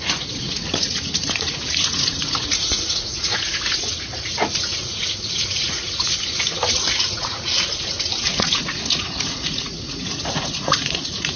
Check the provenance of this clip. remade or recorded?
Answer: remade